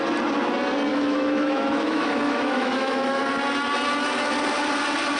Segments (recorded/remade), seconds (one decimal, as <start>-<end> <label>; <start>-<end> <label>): 0.0-0.9 recorded; 0.9-3.2 remade; 3.2-5.2 recorded